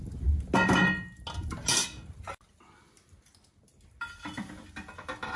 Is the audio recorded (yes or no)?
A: yes